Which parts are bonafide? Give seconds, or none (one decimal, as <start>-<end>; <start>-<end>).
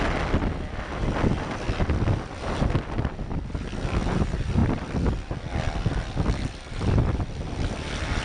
0.0-8.2